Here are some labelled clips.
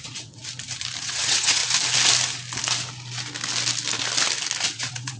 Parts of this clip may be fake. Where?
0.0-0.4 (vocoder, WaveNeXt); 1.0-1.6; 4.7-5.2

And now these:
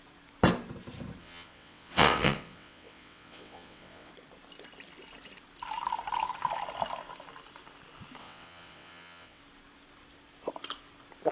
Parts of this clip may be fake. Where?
1.2-4.1 (vocoder, WaveNeXt); 8.2-9.4

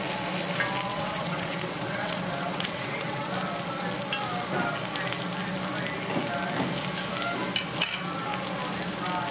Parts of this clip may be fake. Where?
0.9-3.3 (vocoder, WaveNeXt)

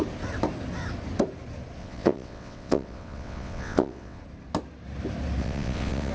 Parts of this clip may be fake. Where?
1.8-4.2 (vocoder, WaveNeXt); 5.4-6.1

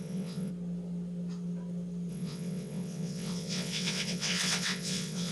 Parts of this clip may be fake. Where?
0.0-0.5 (vocoder, WaveNeXt); 2.1-5.3

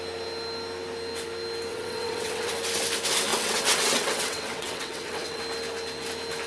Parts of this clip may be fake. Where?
1.7-2.5 (vocoder, WaveNeXt); 3.3-5.4

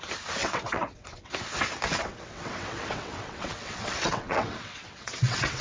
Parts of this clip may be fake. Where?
0.4-1.3 (vocoder, WaveNeXt); 2.0-5.6

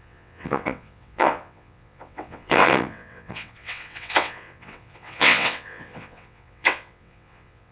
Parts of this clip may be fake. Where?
0.0-7.7 (vocoder, WaveNeXt)